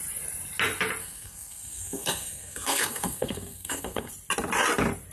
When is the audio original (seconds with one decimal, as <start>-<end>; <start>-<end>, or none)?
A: 0.0-1.0; 4.1-5.1